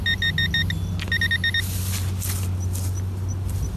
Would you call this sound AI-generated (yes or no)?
no